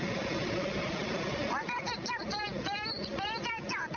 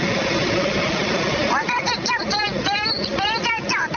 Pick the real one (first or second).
first